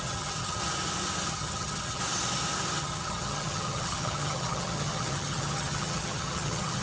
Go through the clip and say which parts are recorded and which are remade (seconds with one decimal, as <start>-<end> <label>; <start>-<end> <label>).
0.0-0.6 remade; 0.6-1.3 recorded; 1.3-2.0 remade; 2.0-2.8 recorded; 2.8-6.8 remade

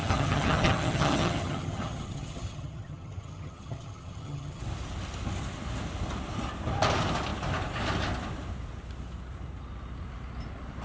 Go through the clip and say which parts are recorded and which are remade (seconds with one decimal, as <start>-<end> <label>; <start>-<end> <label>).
0.0-4.6 remade; 4.6-10.8 recorded